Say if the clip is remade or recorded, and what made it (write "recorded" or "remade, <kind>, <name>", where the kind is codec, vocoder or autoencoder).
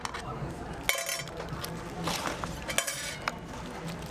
recorded